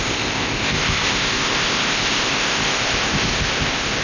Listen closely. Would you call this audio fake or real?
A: fake